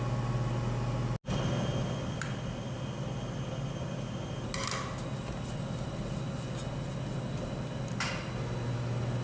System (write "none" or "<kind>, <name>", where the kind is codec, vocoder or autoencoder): none